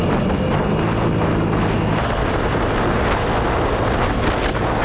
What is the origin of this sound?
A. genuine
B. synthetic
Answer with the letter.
A